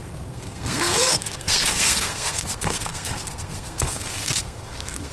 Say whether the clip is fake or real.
fake